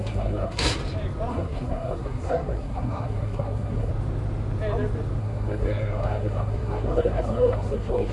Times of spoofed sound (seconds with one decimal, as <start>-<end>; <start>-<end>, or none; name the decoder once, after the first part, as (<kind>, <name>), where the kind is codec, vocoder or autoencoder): 0.0-0.8 (codec, SNAC); 1.3-3.9; 5.2-8.1